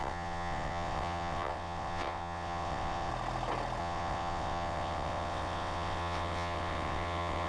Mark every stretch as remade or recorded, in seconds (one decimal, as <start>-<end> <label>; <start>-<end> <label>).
0.0-3.1 remade; 3.1-3.8 recorded; 3.8-7.5 remade